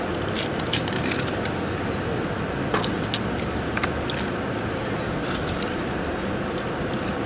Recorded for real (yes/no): yes